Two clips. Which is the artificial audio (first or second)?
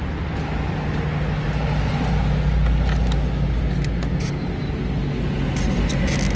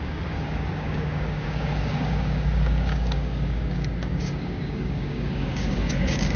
second